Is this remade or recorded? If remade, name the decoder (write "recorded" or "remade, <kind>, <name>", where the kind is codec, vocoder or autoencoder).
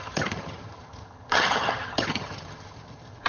remade, vocoder, HiFi-GAN